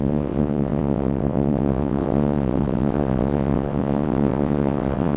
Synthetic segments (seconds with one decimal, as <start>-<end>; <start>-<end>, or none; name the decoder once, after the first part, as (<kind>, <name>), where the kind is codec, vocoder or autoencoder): 0.0-5.2 (vocoder, WaveNeXt)